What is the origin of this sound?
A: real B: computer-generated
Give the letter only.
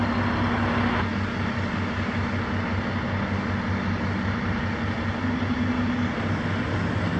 A